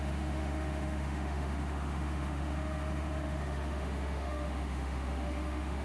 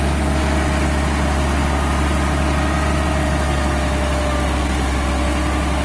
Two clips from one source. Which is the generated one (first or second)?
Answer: first